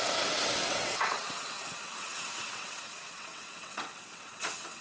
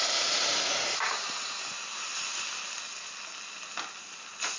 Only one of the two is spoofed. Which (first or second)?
first